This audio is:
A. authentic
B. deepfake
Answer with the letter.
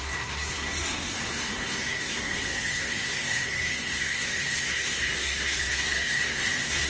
B